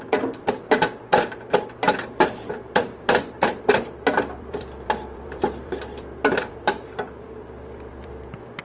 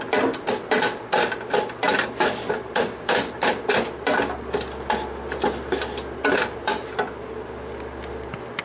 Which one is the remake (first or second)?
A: first